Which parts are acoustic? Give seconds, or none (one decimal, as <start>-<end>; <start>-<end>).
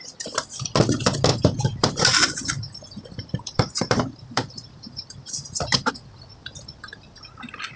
0.0-1.3; 5.9-7.8